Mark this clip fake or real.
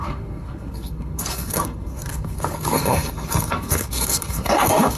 fake